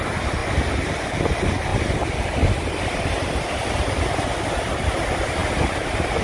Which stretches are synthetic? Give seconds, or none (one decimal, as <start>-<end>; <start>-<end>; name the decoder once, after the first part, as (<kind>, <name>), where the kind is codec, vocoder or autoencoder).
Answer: none